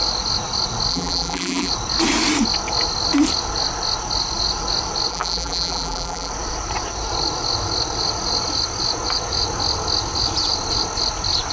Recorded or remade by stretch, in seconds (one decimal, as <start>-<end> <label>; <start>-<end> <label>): 0.0-0.9 recorded; 0.9-1.7 remade; 1.7-5.1 recorded; 5.1-6.3 remade; 6.3-11.5 recorded